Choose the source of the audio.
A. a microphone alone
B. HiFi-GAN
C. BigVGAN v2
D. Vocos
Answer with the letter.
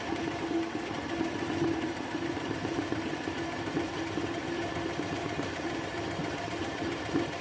C